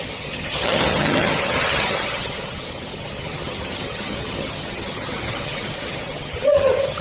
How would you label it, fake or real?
fake